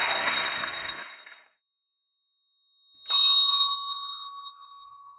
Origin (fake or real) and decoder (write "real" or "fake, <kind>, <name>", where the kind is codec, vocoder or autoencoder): fake, codec, SNAC